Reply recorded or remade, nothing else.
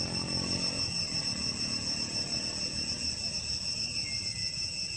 recorded